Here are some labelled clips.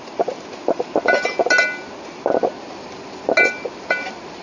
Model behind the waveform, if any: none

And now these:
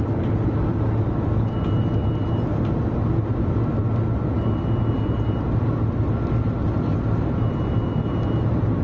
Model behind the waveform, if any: none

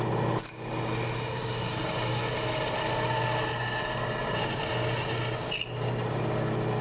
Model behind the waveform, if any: none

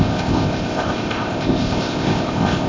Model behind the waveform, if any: codec, ZipCodec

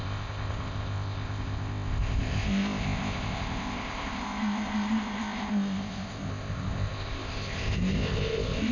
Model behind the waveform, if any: codec, ZipCodec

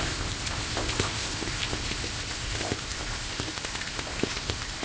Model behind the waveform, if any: codec, ZipCodec